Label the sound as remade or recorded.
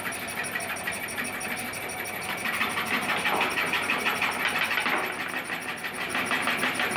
recorded